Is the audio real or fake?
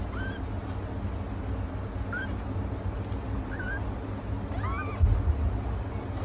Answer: real